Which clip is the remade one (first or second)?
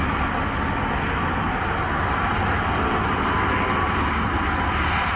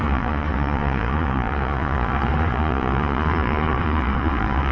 second